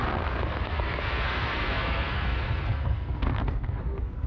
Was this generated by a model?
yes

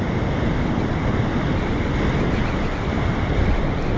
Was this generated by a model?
no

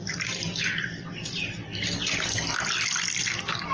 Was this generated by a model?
no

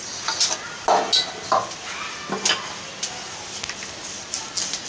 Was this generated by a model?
no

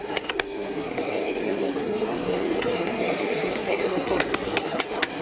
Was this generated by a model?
yes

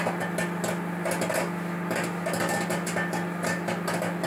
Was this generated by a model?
no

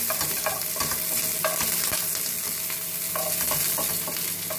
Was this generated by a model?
no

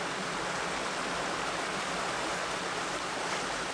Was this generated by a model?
no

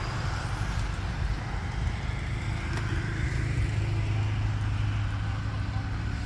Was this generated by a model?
no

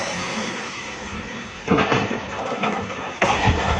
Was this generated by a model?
yes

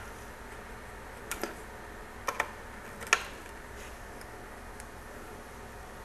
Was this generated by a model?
no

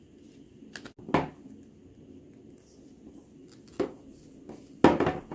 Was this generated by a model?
no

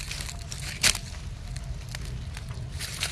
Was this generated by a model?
no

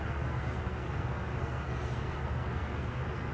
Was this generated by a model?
yes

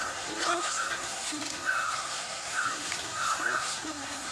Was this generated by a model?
yes